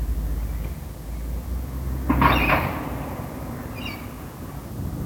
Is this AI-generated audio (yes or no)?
no